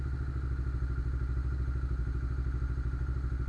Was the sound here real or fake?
real